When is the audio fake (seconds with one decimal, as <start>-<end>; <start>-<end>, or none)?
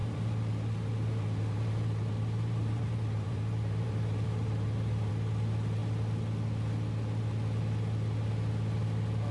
0.0-5.1